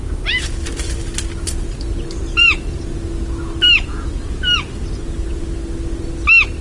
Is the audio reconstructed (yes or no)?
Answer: no